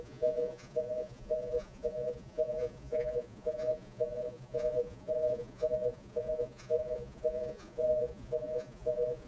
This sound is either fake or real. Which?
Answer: fake